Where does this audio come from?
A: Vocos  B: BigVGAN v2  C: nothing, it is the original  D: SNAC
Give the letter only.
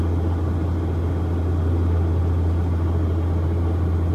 C